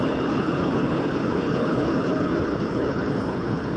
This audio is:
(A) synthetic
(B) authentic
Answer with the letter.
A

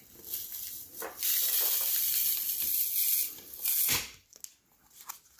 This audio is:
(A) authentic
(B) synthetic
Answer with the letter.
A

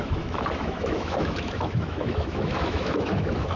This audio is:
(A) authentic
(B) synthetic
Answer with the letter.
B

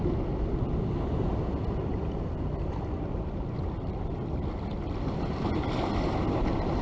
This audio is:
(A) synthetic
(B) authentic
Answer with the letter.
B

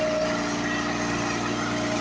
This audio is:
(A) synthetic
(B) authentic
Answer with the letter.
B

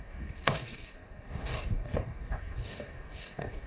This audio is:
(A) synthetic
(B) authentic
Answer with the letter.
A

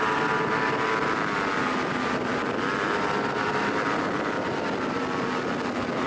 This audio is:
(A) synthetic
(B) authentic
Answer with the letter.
B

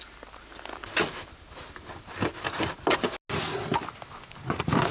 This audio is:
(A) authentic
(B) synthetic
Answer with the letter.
A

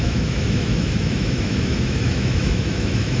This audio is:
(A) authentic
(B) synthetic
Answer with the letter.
B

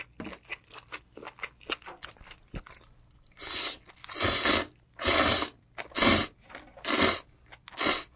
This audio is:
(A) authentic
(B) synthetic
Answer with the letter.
A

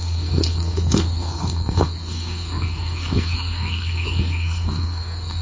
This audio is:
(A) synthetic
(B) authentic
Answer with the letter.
A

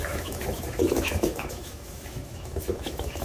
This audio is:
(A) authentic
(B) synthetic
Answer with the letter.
B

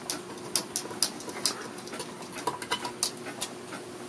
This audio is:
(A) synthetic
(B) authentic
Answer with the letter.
B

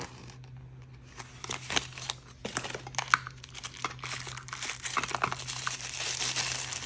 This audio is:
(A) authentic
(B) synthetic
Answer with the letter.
A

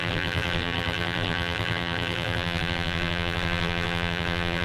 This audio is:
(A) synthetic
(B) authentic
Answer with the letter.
A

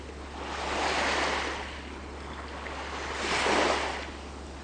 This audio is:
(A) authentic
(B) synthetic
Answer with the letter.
A